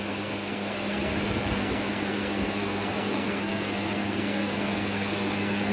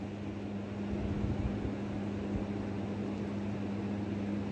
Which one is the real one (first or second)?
second